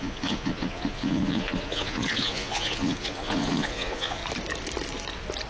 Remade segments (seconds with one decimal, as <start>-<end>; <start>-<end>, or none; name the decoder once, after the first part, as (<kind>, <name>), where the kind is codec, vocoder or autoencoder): 0.0-4.2 (vocoder, Vocos)